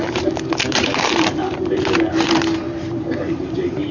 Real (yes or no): no